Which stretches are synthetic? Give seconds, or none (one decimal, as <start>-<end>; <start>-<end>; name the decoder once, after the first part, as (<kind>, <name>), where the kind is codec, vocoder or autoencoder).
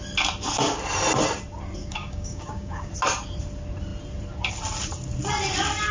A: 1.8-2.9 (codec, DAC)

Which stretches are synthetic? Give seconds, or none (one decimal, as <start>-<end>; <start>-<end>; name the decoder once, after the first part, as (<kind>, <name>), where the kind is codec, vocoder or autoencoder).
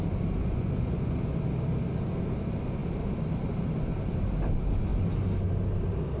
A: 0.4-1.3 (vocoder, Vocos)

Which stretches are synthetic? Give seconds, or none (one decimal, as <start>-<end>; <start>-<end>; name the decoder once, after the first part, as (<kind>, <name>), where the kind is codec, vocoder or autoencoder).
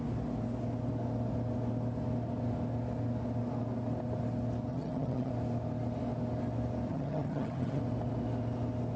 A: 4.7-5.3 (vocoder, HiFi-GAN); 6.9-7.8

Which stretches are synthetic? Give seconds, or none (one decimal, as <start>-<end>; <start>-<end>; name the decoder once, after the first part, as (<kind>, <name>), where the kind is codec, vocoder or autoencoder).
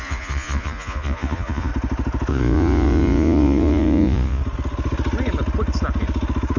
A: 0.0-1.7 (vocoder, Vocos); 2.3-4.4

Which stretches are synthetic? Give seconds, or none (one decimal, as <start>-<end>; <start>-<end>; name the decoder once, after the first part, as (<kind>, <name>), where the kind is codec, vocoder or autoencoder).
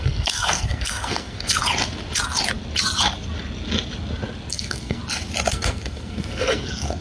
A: 0.0-1.6 (codec, SNAC); 4.5-5.0; 5.5-7.0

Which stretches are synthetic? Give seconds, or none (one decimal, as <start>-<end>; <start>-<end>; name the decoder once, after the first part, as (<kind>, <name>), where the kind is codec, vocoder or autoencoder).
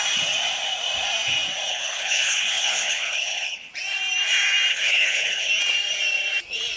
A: 1.7-3.7 (codec, HILCodec); 4.7-5.5